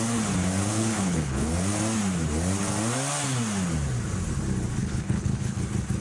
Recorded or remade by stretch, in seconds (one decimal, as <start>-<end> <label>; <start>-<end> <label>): 0.0-0.7 recorded; 0.7-1.5 remade; 1.5-4.8 recorded; 4.8-5.6 remade; 5.6-6.0 recorded